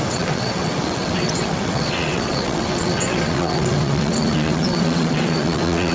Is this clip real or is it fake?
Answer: fake